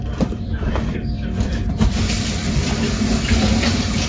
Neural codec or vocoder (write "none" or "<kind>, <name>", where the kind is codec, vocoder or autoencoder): vocoder, BigVGAN v2